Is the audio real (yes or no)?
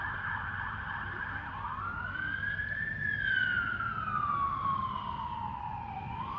yes